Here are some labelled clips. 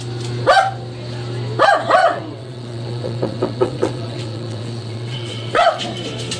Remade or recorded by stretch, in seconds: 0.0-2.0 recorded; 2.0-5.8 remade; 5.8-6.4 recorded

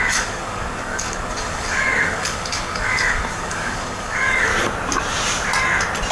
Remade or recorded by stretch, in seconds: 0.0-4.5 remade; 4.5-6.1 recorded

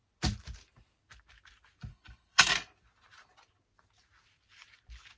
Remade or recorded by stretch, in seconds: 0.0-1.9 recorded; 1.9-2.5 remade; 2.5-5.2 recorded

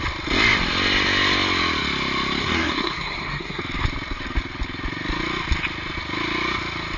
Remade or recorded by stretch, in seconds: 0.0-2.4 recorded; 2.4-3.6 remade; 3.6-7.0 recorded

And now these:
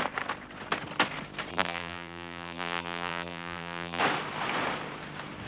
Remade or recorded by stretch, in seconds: 0.0-1.5 recorded; 1.5-4.0 remade; 4.0-5.5 recorded

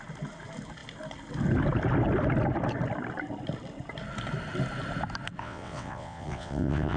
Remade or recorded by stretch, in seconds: 0.0-5.4 recorded; 5.4-7.0 remade

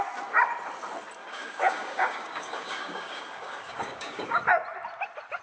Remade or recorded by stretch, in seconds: 0.0-1.2 recorded; 1.2-4.4 remade; 4.4-5.4 recorded